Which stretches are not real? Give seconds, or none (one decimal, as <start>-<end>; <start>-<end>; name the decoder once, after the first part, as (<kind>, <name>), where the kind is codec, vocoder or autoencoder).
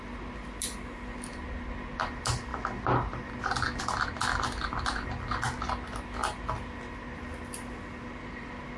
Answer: none